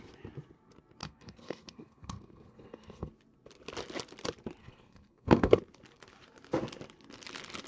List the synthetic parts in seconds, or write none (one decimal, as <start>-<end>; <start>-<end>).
1.0-3.1; 4.6-5.6

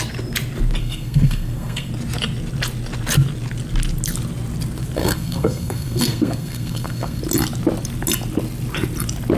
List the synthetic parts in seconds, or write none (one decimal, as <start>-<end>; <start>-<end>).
0.8-1.9; 5.0-7.2

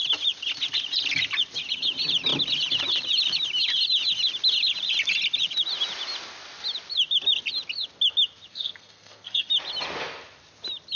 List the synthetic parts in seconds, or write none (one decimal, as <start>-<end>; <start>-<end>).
8.5-9.5

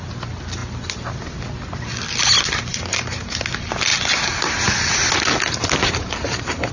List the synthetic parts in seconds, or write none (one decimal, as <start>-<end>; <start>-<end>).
2.7-3.4; 5.8-6.7

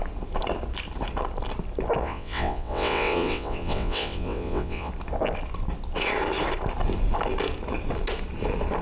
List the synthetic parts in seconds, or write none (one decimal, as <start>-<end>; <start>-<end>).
2.0-4.9

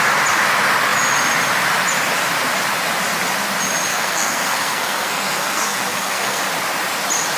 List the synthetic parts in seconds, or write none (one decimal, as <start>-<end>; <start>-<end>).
3.9-6.4

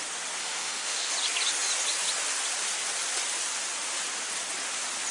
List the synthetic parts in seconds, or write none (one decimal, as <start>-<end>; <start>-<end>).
0.4-1.1

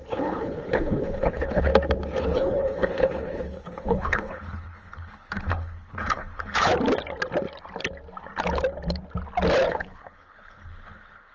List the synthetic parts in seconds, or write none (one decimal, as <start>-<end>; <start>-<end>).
0.0-1.7; 2.2-6.7; 9.7-11.3